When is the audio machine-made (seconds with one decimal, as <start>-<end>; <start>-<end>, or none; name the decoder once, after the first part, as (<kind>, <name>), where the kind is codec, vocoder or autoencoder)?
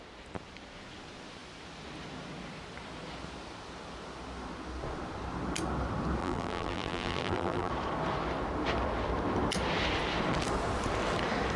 6.2-7.7 (vocoder, BigVGAN v2)